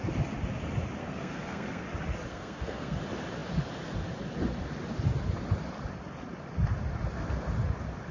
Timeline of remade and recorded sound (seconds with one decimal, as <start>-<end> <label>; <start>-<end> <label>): 0.0-1.0 recorded; 1.0-1.8 remade; 1.8-2.3 recorded; 2.3-3.0 remade; 3.0-8.1 recorded